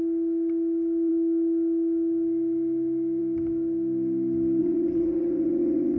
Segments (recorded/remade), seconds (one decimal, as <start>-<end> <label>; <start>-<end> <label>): 0.0-4.6 recorded; 4.6-6.0 remade